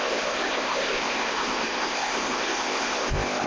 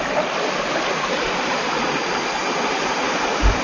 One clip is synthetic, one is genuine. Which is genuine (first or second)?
second